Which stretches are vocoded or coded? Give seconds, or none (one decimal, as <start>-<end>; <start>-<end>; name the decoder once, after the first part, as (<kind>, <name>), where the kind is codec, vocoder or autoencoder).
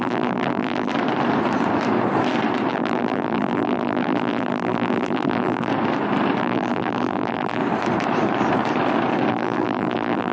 0.0-0.9 (vocoder, BigVGAN v2); 2.7-5.7; 6.4-7.6; 9.3-10.3